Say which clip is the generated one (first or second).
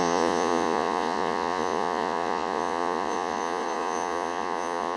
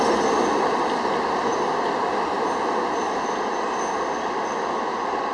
first